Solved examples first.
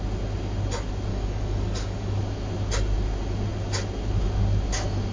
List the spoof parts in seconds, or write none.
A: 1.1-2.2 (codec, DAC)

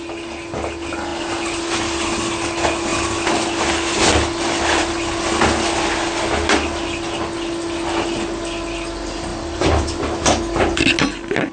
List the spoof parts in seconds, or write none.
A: 9.3-10.0 (vocoder, BigVGAN v2)

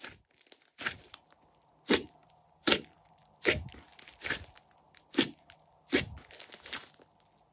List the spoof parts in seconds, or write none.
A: none

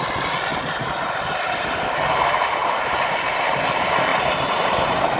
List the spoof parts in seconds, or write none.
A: 0.5-3.6 (vocoder, BigVGAN v2); 4.1-5.2

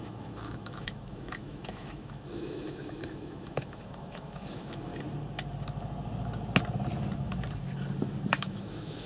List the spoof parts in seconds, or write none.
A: 0.0-4.9 (autoencoder, DAC-VAE); 8.3-9.1

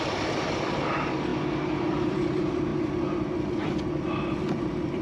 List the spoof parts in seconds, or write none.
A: 0.0-1.3 (vocoder, BigVGAN v2); 1.8-5.0

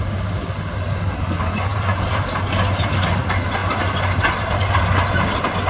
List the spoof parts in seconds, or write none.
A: 1.7-2.3 (vocoder, BigVGAN v2); 3.6-4.9